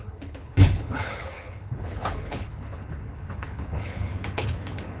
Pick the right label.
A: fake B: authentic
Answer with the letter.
A